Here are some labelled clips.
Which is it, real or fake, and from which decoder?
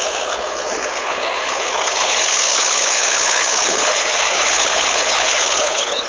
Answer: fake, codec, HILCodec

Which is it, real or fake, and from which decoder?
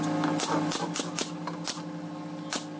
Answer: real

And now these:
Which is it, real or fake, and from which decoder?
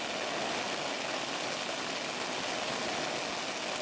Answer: real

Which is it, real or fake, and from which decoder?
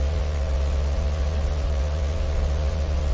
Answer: fake, vocoder, Vocos